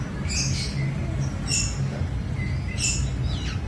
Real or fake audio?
real